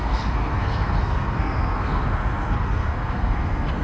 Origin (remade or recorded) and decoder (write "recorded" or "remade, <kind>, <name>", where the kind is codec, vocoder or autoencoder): remade, codec, SNAC